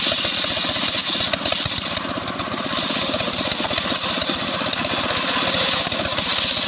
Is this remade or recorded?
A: recorded